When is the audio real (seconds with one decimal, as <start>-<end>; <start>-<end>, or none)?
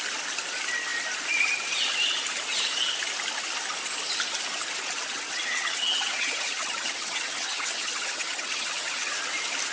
0.0-5.1; 9.1-9.7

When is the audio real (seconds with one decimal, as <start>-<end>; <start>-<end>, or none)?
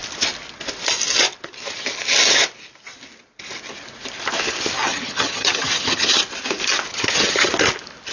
0.0-4.9; 6.2-6.9; 7.5-8.1